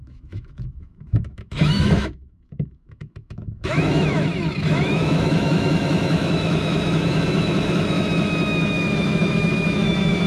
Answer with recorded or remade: remade